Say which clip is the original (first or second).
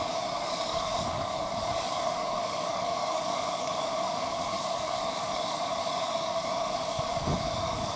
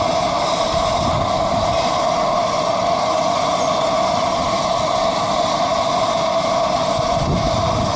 second